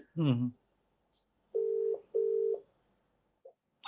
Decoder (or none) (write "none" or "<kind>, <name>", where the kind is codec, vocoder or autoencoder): none